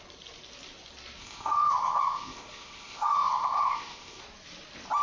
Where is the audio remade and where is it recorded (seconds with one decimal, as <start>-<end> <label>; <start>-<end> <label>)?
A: 0.0-1.2 recorded; 1.2-4.2 remade; 4.2-5.0 recorded